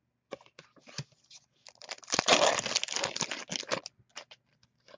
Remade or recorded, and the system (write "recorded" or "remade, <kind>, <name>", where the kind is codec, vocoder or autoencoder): recorded